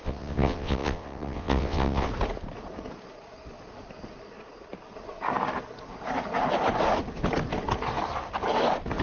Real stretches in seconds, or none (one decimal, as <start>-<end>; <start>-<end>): 2.1-9.0